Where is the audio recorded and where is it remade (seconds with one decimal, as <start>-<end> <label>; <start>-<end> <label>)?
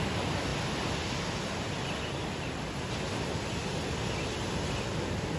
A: 0.0-5.4 recorded